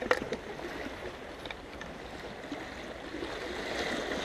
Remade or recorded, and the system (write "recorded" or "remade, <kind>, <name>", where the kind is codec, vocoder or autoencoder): recorded